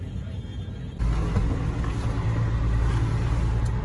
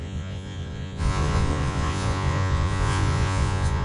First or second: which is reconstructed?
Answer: second